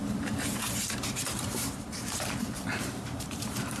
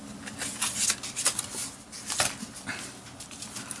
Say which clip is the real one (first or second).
second